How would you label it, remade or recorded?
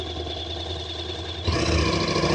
recorded